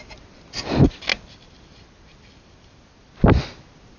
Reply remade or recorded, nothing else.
recorded